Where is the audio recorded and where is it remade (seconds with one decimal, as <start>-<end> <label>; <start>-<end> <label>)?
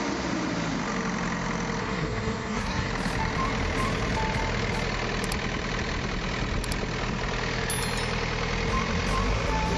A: 0.0-1.8 recorded; 1.8-2.9 remade; 2.9-9.8 recorded